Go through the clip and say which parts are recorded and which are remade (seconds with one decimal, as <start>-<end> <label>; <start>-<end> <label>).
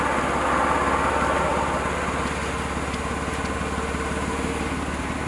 0.0-5.3 recorded